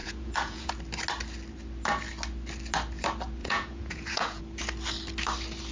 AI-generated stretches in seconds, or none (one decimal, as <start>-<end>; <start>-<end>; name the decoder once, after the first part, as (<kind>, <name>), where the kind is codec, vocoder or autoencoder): 0.0-0.7 (vocoder, Vocos); 3.4-4.4